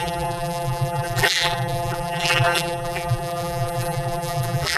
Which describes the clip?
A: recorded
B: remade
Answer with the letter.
B